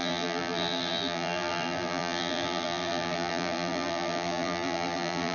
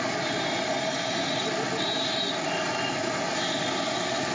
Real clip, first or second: second